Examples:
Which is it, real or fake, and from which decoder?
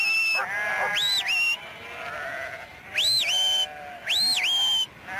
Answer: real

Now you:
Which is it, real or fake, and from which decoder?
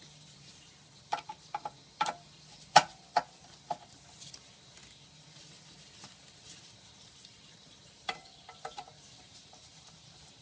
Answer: fake, vocoder, BigVGAN v2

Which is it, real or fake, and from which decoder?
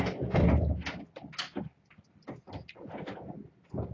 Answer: real